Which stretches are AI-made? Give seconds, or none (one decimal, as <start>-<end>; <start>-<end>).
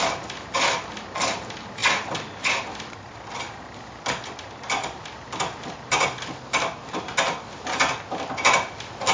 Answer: none